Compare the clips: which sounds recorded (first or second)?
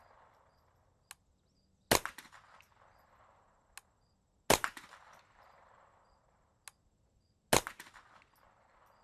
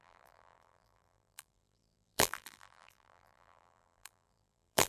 first